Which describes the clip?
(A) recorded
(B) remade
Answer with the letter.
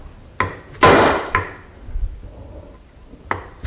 A